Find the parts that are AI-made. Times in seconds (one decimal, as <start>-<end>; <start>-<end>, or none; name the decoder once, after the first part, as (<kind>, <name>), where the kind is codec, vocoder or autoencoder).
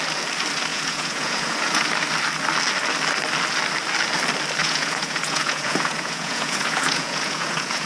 0.7-1.9 (vocoder, Vocos); 4.6-7.9